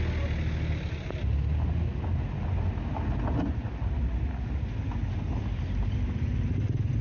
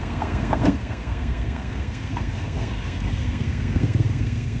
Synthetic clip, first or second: second